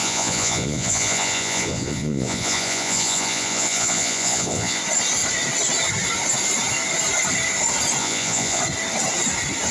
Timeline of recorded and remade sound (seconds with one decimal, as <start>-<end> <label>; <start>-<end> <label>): 0.0-4.8 remade; 4.8-8.0 recorded; 8.0-8.6 remade; 8.6-9.7 recorded